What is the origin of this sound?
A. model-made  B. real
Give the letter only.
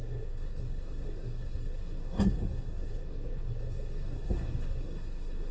A